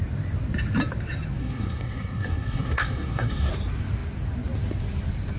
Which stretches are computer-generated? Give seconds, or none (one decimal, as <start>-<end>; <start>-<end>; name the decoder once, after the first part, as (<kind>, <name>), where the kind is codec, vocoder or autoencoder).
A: 1.4-3.5 (codec, SNAC)